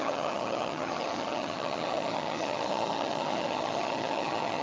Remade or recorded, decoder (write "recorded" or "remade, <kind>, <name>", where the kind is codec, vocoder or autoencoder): remade, vocoder, HiFi-GAN